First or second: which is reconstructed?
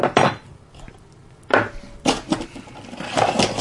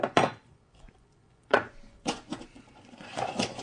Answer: second